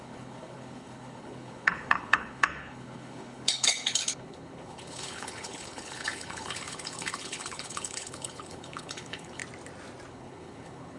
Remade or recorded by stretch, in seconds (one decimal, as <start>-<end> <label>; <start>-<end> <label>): 0.0-9.4 remade; 9.4-10.1 recorded; 10.1-11.0 remade

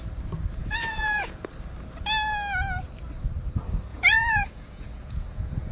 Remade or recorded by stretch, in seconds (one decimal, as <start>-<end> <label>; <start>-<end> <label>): 0.0-0.6 recorded; 0.6-1.4 remade; 1.4-3.9 recorded; 3.9-5.7 remade

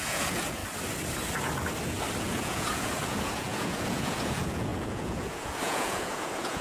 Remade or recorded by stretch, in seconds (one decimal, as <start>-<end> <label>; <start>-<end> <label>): 0.0-0.6 remade; 0.6-2.2 recorded; 2.2-6.6 remade

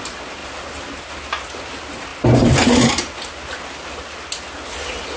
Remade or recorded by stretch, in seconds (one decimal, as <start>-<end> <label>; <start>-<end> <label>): 0.0-5.2 recorded

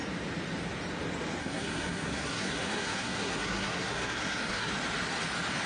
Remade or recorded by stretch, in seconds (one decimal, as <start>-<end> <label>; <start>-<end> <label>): 0.0-1.4 recorded; 1.4-4.7 remade; 4.7-5.7 recorded

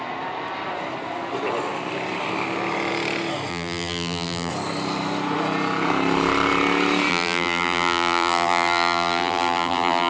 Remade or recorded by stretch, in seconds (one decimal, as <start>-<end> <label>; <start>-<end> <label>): 0.0-3.5 recorded; 3.5-4.5 remade; 4.5-7.1 recorded; 7.1-10.1 remade

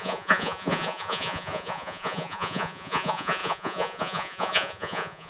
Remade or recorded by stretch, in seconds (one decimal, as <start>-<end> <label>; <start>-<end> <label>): 0.0-5.3 remade